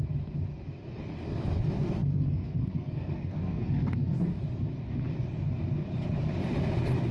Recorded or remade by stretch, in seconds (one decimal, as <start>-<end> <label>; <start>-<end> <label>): 0.0-2.0 recorded; 2.0-4.1 remade; 4.1-7.1 recorded

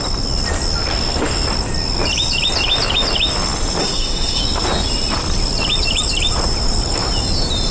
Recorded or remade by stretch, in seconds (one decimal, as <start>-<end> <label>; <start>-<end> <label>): 0.0-3.8 recorded; 3.8-4.4 remade; 4.4-7.7 recorded

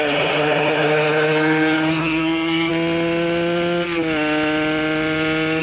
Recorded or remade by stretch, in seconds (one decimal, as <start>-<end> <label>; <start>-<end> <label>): 0.0-2.7 remade; 2.7-5.6 recorded

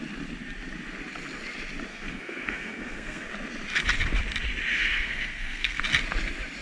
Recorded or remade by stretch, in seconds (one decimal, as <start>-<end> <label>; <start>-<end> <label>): 0.0-1.9 recorded; 1.9-3.3 remade; 3.3-4.7 recorded; 4.7-5.8 remade; 5.8-6.6 recorded

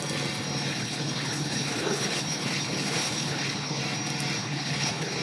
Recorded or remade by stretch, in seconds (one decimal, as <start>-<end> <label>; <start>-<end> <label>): 0.0-0.7 recorded; 0.7-3.8 remade; 3.8-4.4 recorded; 4.4-5.2 remade